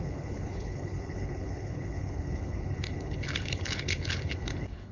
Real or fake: fake